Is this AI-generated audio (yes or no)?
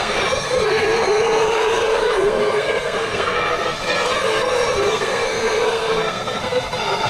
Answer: yes